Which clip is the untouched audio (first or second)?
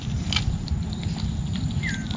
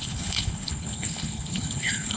first